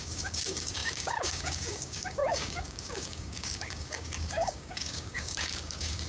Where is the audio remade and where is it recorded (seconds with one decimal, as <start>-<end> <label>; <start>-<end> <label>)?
0.0-6.1 remade